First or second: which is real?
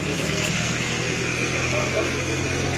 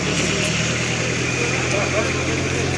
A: second